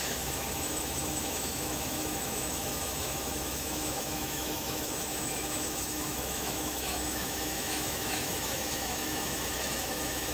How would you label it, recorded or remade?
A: remade